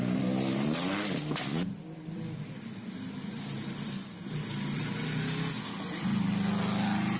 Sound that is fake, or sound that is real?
real